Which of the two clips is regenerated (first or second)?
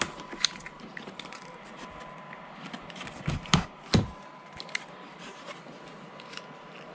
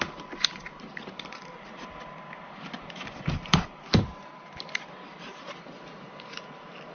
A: second